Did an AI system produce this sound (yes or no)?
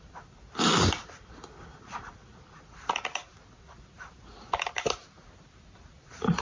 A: no